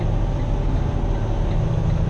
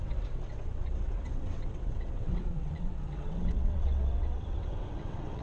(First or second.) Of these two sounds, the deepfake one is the second